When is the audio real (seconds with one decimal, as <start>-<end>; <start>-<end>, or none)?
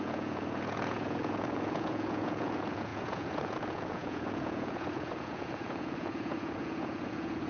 none